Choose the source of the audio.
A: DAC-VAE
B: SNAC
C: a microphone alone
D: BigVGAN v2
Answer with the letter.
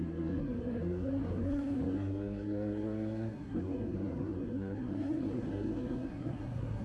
B